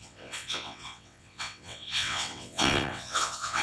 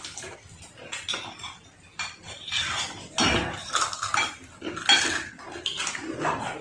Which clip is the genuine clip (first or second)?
second